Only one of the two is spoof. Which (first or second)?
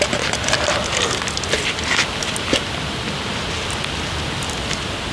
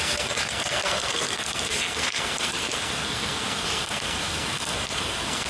second